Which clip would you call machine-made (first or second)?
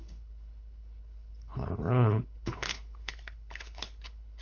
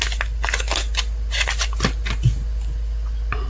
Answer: first